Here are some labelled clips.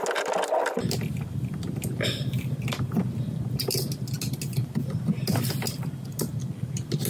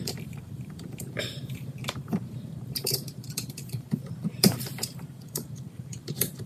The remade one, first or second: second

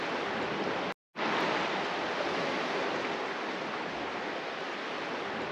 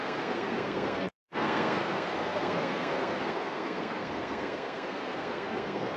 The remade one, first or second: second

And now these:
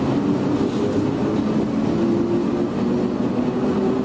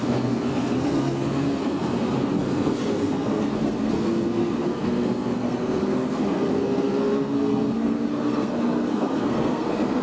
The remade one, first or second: second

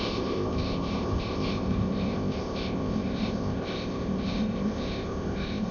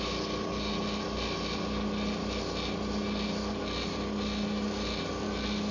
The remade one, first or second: first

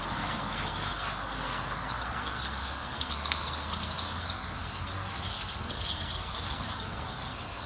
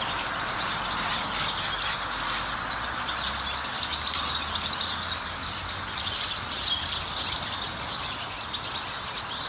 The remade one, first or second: first